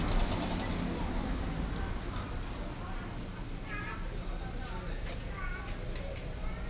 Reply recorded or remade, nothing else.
recorded